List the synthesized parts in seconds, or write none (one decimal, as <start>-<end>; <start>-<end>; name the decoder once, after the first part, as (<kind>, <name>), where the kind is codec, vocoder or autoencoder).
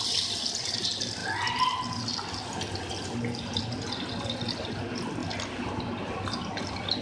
none